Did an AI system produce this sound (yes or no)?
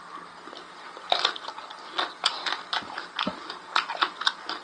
no